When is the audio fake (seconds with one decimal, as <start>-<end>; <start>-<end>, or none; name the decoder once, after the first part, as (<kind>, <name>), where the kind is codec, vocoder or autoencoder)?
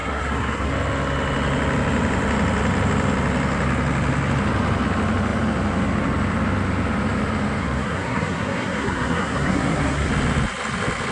0.0-0.7 (codec, SNAC); 7.6-10.1